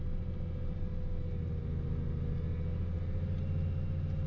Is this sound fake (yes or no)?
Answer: no